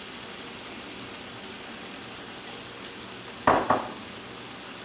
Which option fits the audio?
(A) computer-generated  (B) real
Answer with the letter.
B